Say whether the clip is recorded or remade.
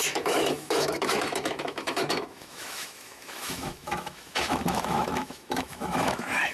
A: remade